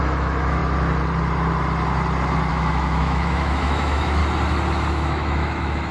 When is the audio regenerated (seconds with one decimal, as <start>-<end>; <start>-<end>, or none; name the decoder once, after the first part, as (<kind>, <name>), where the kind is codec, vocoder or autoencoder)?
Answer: 0.0-0.6 (autoencoder, DAC-VAE); 2.5-4.2; 4.9-5.9